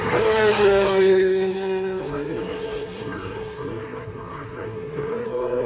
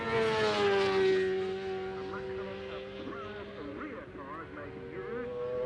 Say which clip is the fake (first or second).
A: first